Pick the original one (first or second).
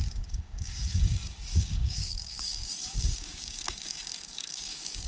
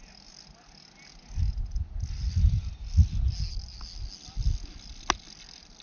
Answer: second